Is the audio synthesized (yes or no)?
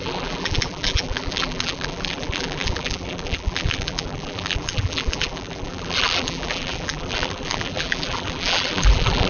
yes